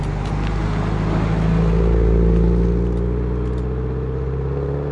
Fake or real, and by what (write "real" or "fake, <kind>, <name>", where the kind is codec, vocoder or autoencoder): real